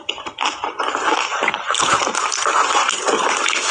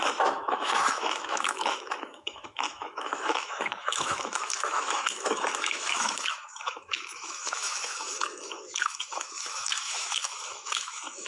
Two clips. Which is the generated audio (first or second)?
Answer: second